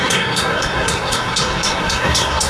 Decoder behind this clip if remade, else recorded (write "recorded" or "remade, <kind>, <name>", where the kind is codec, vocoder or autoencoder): remade, codec, SNAC